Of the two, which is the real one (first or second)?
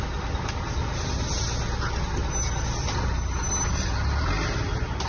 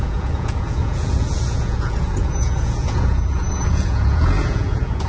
first